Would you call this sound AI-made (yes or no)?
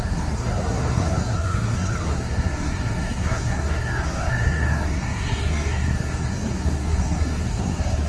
yes